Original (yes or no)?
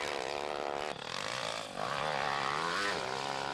yes